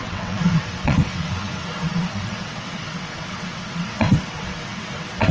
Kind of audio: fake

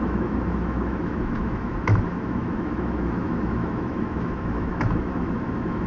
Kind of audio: fake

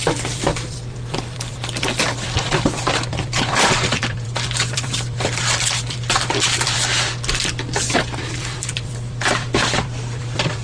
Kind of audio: fake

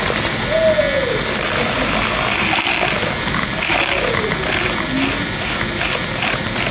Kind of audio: real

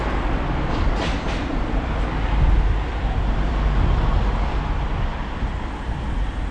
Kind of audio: fake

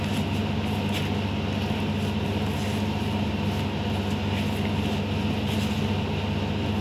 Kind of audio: real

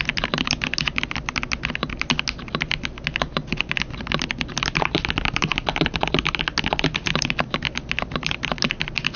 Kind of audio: real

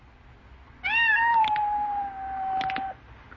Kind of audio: real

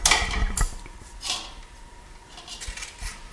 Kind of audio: real